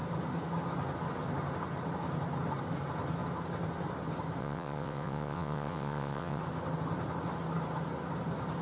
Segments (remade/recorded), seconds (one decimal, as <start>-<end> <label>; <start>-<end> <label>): 0.0-4.4 recorded; 4.4-6.4 remade; 6.4-8.6 recorded